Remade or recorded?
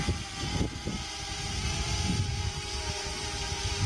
recorded